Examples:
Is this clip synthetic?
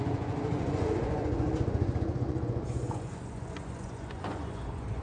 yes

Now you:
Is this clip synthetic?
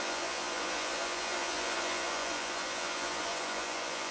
yes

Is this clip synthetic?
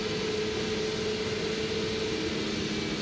no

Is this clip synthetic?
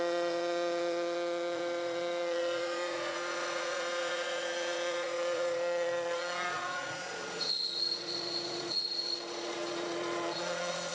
yes